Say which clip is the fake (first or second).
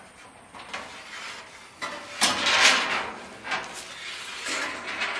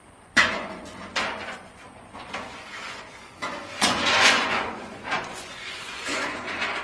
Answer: second